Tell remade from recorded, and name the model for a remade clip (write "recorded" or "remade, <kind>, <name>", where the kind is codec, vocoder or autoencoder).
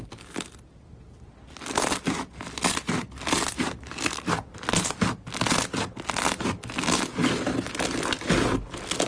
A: recorded